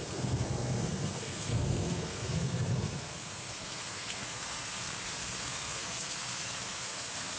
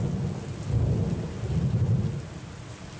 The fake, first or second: first